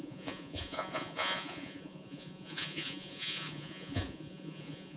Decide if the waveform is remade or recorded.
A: remade